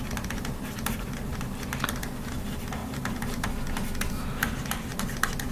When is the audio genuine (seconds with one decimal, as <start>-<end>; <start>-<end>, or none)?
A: 0.0-5.5